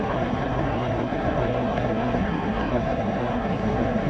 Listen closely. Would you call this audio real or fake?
fake